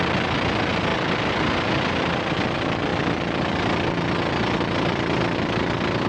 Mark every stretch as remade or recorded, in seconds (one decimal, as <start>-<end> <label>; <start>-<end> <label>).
0.0-0.9 recorded; 0.9-2.2 remade; 2.2-6.1 recorded